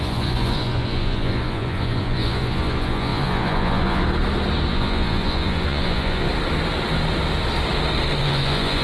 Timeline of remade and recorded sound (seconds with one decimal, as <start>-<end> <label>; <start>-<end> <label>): 0.0-4.0 remade; 4.0-4.7 recorded; 4.7-6.3 remade; 6.3-8.2 recorded; 8.2-8.8 remade